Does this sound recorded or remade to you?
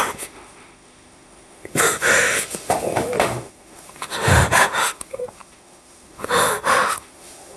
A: remade